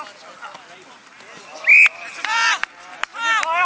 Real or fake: real